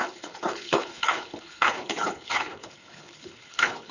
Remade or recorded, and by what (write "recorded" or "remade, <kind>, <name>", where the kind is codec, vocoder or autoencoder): remade, codec, HILCodec